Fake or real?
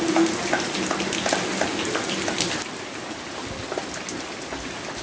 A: real